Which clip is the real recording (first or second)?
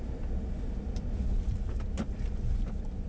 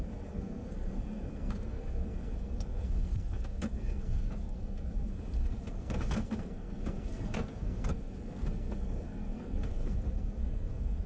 first